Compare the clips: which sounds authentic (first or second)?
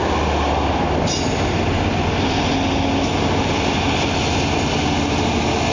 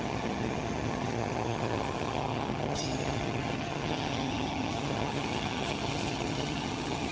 first